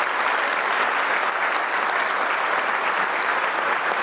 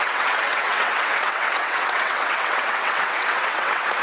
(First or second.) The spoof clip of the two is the second